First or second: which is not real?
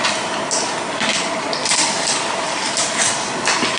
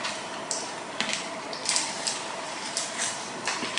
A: second